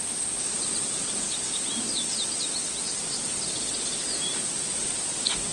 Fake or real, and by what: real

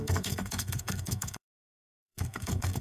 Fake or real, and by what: fake, codec, SNAC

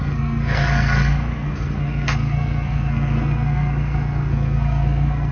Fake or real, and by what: fake, codec, SNAC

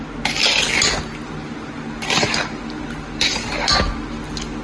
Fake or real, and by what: real